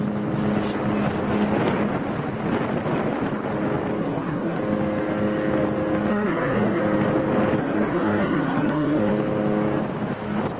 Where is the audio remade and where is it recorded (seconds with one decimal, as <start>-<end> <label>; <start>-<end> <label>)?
0.0-4.0 recorded; 4.0-4.6 remade; 4.6-6.1 recorded; 6.1-6.8 remade; 6.8-7.6 recorded; 7.6-9.1 remade; 9.1-10.6 recorded